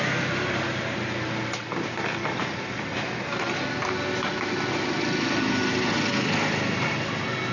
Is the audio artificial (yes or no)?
no